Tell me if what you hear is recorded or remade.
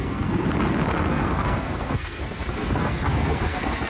remade